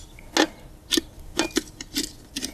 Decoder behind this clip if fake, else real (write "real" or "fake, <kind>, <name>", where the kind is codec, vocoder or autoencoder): real